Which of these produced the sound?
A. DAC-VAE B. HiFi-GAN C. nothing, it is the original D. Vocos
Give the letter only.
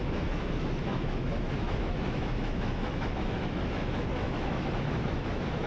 A